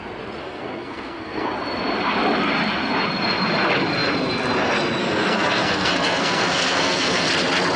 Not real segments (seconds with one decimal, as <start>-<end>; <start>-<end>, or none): 0.4-1.5; 5.0-7.3